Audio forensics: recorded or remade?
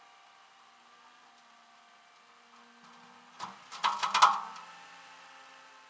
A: recorded